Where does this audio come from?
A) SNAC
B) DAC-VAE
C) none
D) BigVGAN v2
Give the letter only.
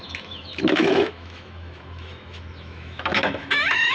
B